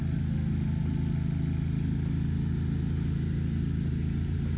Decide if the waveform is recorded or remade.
recorded